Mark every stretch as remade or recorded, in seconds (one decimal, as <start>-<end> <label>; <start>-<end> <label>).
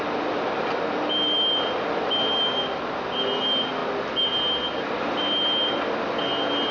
0.0-6.7 recorded